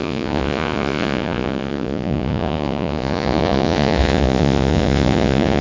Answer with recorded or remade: remade